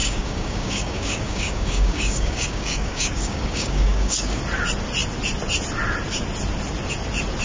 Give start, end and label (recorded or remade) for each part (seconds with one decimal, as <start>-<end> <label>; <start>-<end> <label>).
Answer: 0.0-4.4 remade; 4.4-7.4 recorded